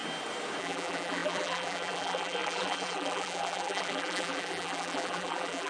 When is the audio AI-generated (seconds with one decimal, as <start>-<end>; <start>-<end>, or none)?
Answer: 0.6-5.7